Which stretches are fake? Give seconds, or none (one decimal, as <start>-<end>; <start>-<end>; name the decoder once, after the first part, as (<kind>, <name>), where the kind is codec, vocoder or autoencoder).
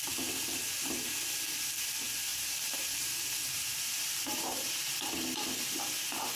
2.3-4.7 (vocoder, BigVGAN v2)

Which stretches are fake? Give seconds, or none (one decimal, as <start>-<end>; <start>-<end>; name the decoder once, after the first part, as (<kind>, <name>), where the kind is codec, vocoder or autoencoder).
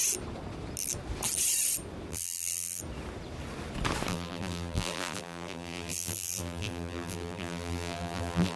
2.1-2.8 (vocoder, BigVGAN v2); 4.1-8.6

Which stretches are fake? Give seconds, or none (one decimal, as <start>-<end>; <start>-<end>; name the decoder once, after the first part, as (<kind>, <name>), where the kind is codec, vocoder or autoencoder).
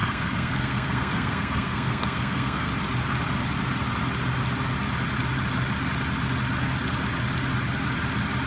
0.0-2.7 (codec, SNAC)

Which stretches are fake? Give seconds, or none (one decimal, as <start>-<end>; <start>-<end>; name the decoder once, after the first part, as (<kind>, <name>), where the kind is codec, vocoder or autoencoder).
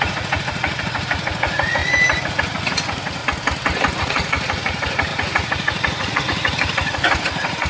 0.0-1.8 (vocoder, Vocos); 2.3-3.2; 4.0-7.7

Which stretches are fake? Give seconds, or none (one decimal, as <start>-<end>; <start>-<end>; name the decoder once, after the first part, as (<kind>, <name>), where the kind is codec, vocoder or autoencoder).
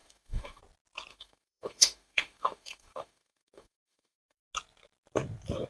0.0-0.6 (autoencoder, DAC-VAE); 1.1-4.4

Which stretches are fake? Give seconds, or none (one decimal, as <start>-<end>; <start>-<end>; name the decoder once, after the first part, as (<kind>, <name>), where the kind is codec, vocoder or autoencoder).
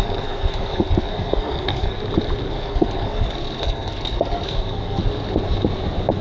0.0-2.0 (codec, SNAC); 2.5-5.0